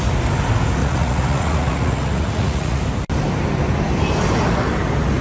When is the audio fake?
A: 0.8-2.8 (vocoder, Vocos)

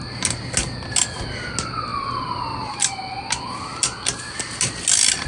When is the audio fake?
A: none

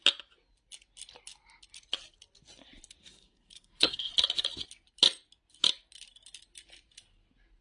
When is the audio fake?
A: 3.0-4.1 (codec, SNAC)